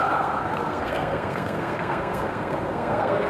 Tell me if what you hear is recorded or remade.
remade